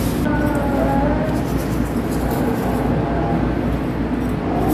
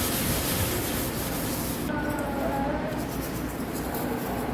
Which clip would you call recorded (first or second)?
first